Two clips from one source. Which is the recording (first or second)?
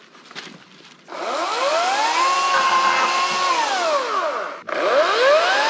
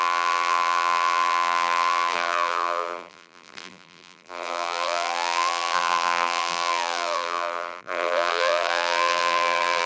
first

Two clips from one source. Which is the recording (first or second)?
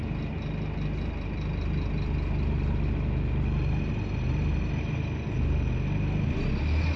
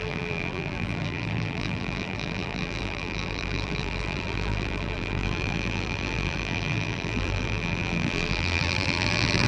first